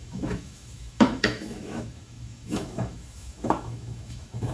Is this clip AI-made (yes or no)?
yes